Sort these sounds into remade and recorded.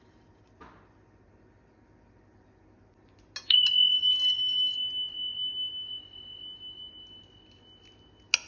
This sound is recorded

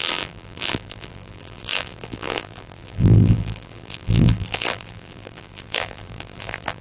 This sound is remade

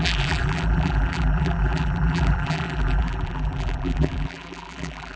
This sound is remade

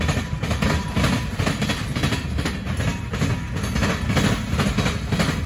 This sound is recorded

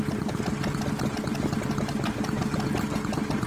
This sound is recorded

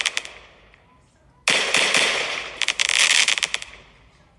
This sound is recorded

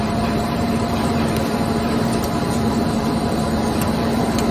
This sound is remade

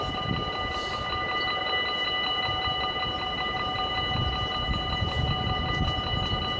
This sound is recorded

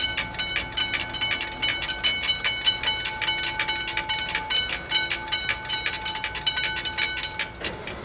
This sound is recorded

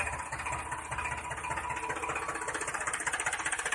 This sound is recorded